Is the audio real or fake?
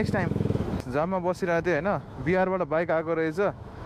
fake